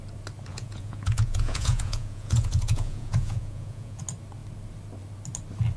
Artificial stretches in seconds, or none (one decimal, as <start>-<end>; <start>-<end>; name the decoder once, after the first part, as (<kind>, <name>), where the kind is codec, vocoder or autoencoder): 0.5-4.0 (vocoder, Vocos)